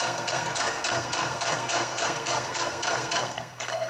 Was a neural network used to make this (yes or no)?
yes